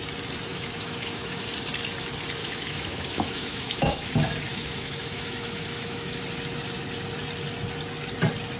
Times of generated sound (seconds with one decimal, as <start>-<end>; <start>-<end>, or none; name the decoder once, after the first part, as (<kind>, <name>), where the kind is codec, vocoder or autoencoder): 0.5-1.4 (autoencoder, DAC-VAE); 2.4-4.1; 4.5-6.2